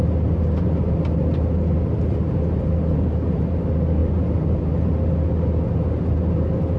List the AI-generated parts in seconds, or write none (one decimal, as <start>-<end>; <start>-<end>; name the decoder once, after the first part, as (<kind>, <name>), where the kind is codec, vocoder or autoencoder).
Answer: none